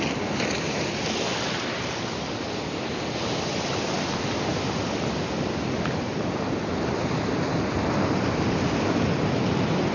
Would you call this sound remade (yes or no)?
no